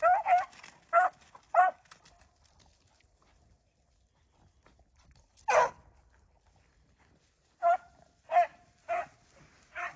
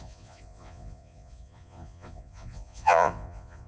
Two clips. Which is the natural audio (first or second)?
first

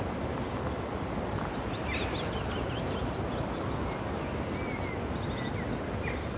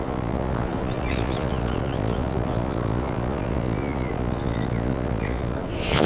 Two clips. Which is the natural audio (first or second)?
first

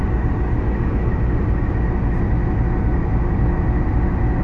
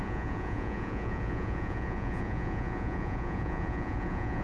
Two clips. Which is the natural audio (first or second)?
first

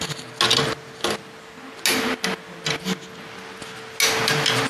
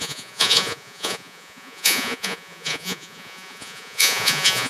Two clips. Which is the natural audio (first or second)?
first